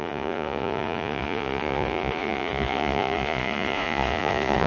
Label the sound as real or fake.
fake